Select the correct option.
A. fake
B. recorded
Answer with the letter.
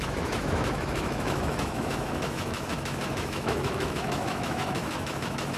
A